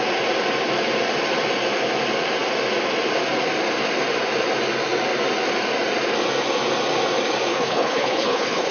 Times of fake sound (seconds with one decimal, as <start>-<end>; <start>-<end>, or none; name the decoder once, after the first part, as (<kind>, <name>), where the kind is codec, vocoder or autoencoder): 7.5-8.7 (codec, HILCodec)